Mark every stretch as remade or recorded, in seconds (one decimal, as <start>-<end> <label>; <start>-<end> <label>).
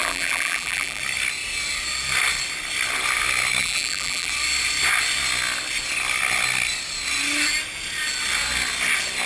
0.0-1.0 remade; 1.0-3.6 recorded; 3.6-4.3 remade; 4.3-9.3 recorded